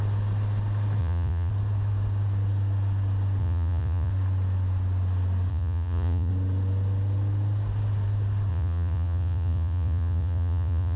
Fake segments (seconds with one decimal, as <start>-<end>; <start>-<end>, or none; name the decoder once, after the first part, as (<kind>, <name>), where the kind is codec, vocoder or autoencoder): 1.0-1.5 (vocoder, Vocos); 3.4-4.1; 5.5-6.3; 8.5-11.0